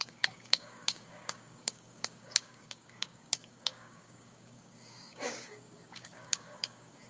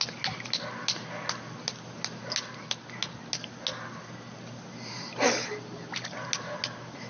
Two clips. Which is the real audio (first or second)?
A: second